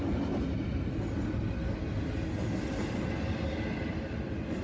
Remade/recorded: recorded